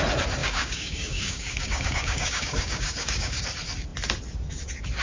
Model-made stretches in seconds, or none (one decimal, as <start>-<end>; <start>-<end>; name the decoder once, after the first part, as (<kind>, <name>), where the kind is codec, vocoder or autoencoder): 0.4-3.4 (codec, DAC)

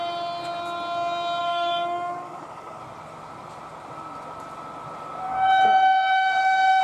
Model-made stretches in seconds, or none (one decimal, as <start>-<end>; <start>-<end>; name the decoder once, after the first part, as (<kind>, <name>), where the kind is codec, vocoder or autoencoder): 1.4-2.8 (codec, DAC); 5.3-6.8

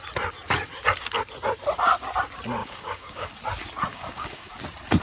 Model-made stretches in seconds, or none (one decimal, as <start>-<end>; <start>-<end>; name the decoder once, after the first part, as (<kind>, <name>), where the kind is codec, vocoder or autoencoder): 2.6-3.3 (codec, DAC); 3.9-4.6

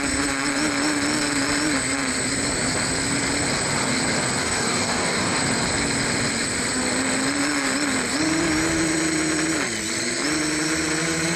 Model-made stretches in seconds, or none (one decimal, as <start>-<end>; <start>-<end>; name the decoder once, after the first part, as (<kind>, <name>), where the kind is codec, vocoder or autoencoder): 4.4-5.4 (codec, DAC)

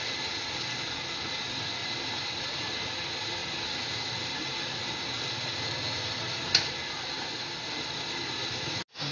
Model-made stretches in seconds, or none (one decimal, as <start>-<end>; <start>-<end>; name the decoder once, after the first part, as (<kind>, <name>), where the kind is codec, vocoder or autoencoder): none